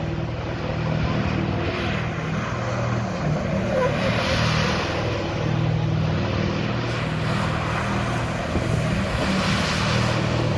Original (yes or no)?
yes